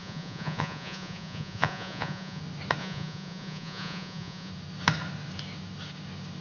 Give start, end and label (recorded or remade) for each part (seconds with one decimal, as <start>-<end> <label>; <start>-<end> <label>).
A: 0.0-2.4 remade; 2.4-2.8 recorded; 2.8-4.5 remade; 4.5-6.4 recorded